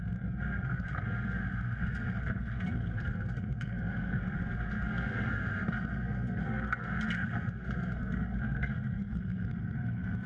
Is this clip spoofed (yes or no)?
yes